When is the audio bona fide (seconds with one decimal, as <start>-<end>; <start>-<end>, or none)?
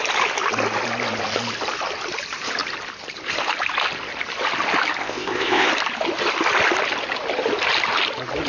0.0-5.0; 5.7-8.5